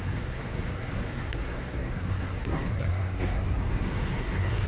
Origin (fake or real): fake